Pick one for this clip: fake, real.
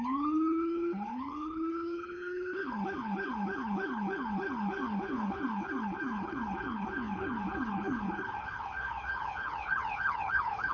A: fake